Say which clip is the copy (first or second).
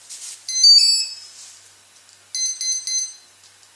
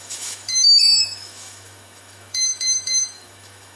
second